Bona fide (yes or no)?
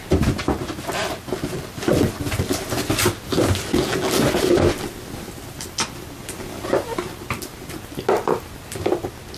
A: yes